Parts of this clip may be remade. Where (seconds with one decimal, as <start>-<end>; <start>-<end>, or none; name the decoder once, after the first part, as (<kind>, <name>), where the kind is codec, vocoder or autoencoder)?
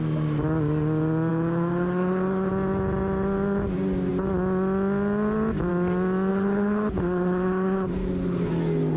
1.3-2.5 (codec, HILCodec); 6.3-8.5